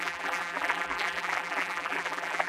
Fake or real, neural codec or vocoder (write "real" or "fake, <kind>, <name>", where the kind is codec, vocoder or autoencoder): fake, vocoder, BigVGAN v2